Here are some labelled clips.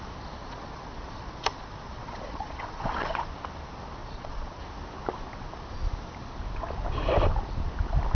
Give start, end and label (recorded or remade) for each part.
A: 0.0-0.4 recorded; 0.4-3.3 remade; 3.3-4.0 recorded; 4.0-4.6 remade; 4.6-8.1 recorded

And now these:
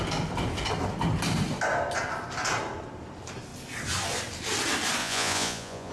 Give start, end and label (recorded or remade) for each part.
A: 0.0-5.0 recorded; 5.0-5.9 remade

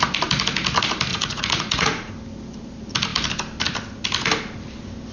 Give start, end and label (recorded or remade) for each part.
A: 0.0-1.1 recorded; 1.1-2.1 remade; 2.1-5.1 recorded

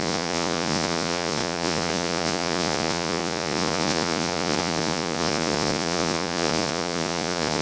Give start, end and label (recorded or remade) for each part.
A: 0.0-7.6 remade